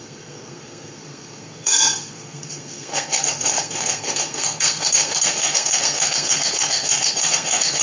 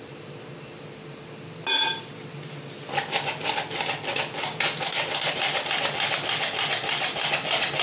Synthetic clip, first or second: first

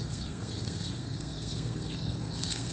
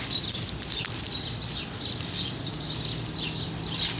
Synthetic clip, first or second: first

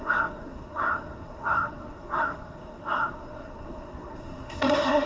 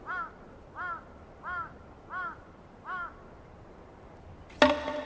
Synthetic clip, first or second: first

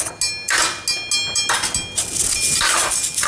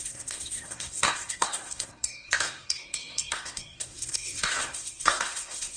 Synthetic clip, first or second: second